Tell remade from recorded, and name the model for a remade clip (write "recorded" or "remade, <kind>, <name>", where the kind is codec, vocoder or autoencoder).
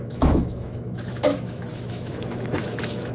remade, autoencoder, DAC-VAE